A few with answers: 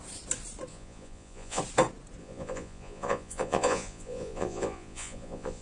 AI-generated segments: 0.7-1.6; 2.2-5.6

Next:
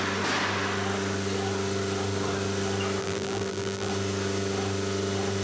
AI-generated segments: 3.0-3.9

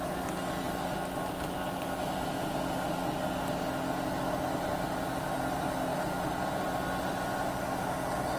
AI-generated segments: none

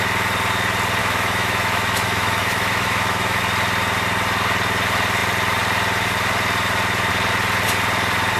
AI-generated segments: 1.0-3.4

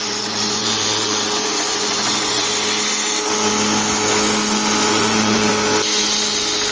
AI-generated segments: 0.0-2.5; 4.9-5.5

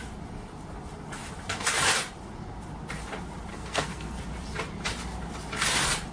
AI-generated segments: 3.5-4.2

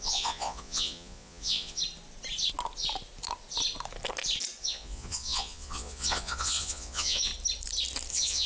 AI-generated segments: 0.0-1.8; 4.6-7.3; 8.1-8.5

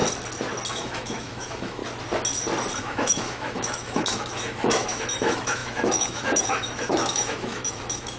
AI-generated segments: 0.7-1.8; 2.8-8.2